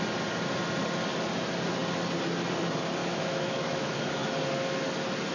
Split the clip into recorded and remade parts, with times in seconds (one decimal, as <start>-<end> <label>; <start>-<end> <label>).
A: 0.0-3.0 recorded; 3.0-4.3 remade; 4.3-5.3 recorded